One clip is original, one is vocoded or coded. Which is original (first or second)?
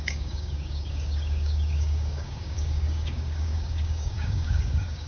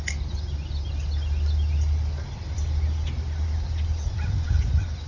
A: second